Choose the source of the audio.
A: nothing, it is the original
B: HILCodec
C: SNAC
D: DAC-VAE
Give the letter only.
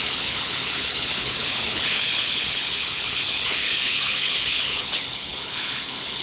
B